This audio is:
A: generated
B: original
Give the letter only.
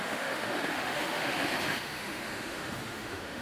A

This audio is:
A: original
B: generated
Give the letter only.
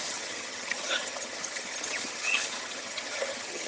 B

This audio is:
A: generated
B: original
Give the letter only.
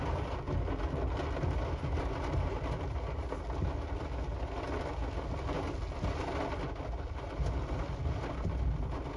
B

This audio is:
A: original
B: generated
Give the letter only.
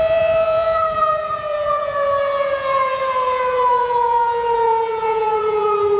B